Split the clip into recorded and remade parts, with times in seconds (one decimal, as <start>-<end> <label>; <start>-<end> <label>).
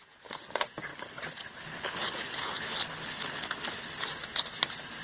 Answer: 0.0-0.9 recorded; 0.9-3.9 remade; 3.9-5.0 recorded